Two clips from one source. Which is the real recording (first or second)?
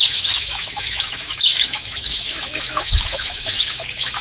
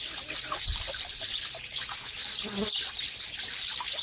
second